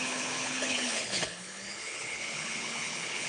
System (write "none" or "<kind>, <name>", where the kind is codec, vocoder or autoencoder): codec, HILCodec